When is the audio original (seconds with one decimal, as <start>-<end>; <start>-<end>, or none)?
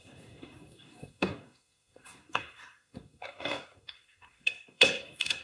none